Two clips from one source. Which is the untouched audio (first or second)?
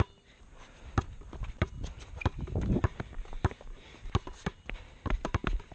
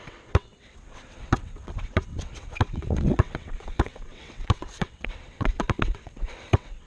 first